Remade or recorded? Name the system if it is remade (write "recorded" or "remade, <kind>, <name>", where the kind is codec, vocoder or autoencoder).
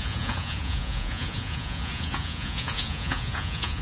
remade, vocoder, Vocos